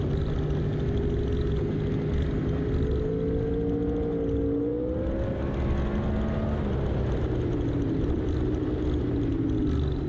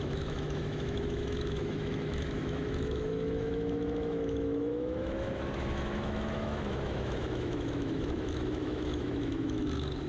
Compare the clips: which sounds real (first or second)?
first